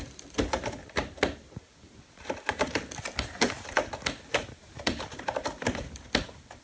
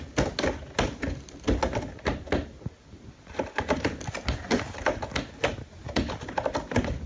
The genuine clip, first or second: second